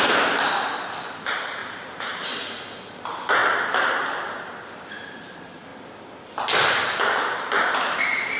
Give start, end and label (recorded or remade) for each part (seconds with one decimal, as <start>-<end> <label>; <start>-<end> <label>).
0.0-4.5 remade; 4.5-5.0 recorded; 5.0-5.7 remade; 5.7-7.3 recorded; 7.3-8.4 remade